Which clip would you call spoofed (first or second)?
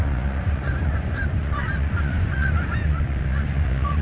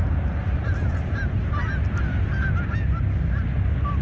first